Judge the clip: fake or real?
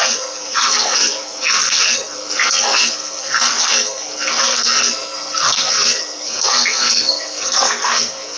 fake